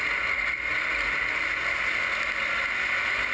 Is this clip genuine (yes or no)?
yes